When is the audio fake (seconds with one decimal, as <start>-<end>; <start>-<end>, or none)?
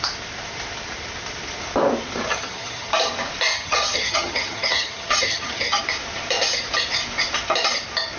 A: 2.3-2.9; 3.5-5.8